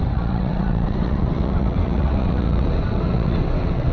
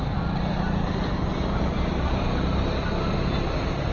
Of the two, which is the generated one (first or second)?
first